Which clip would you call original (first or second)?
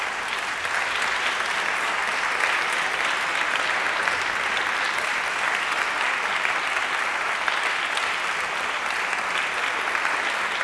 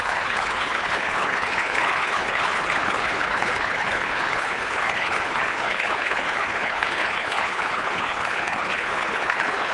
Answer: first